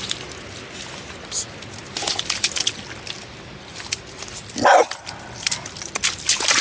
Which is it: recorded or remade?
recorded